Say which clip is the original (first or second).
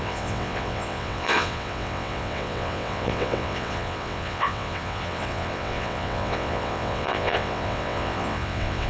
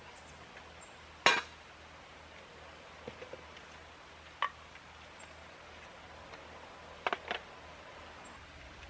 second